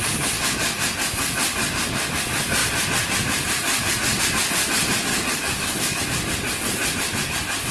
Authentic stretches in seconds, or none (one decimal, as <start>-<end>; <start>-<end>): 0.0-5.1; 6.0-7.7